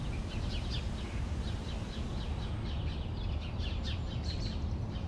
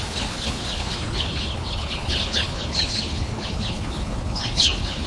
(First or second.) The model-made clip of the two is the second